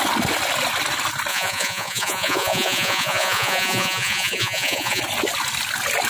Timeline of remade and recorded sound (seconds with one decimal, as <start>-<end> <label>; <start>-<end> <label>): 0.0-1.3 recorded; 1.3-5.0 remade; 5.0-6.1 recorded

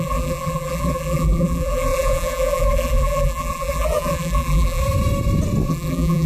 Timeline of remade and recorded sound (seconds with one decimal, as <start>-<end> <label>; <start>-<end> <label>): 0.0-4.8 remade; 4.8-5.7 recorded; 5.7-6.3 remade

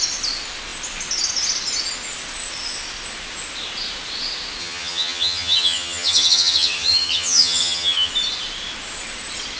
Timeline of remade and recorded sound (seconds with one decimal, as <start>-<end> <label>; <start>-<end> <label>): 0.0-4.6 recorded; 4.6-8.1 remade; 8.1-9.6 recorded

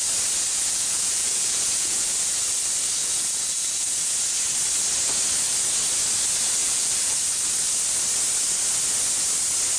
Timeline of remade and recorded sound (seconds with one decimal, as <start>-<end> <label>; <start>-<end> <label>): 0.0-0.5 recorded; 0.5-2.4 remade; 2.4-3.0 recorded; 3.0-4.2 remade; 4.2-6.6 recorded; 6.6-7.2 remade; 7.2-9.8 recorded

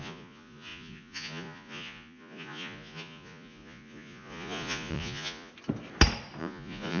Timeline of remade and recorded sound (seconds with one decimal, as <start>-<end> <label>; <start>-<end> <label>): 0.0-5.5 remade; 5.5-6.4 recorded; 6.4-7.0 remade